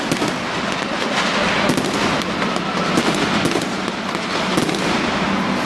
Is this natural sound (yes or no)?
yes